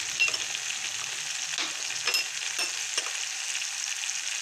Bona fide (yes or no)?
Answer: yes